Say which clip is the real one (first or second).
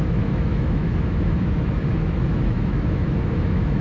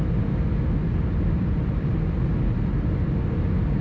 second